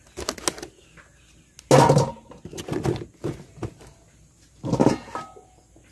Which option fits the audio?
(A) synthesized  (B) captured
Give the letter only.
B